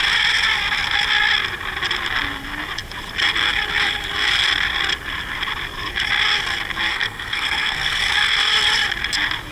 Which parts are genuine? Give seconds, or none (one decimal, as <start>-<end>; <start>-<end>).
0.0-6.9; 8.0-9.5